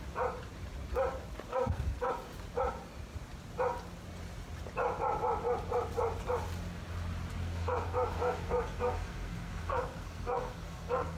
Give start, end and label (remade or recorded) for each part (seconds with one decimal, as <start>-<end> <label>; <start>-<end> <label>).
0.0-1.5 recorded; 1.5-2.1 remade; 2.1-7.4 recorded; 7.4-11.2 remade